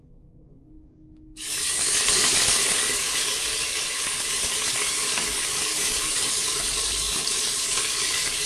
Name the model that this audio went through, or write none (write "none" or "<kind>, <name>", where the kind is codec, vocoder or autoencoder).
codec, DAC